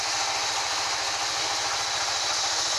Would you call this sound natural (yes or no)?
yes